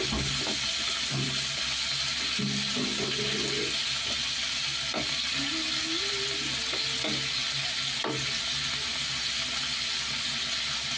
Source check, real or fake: real